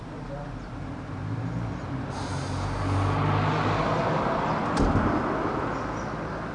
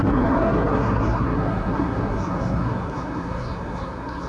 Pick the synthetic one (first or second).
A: second